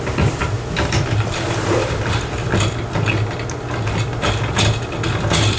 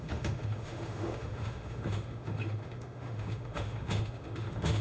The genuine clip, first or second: first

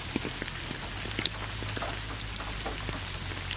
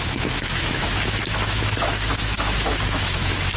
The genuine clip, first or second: first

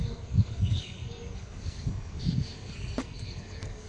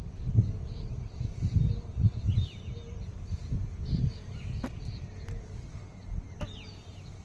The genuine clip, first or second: second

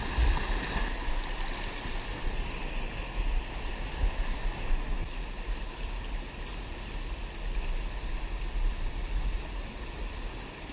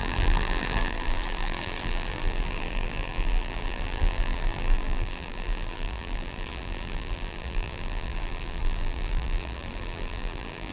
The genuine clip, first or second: first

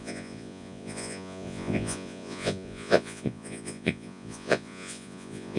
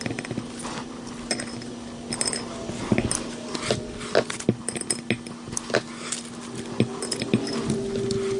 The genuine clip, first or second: second